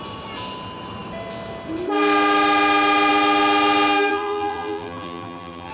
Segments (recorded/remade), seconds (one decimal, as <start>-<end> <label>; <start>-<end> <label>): 0.0-4.1 recorded; 4.1-5.7 remade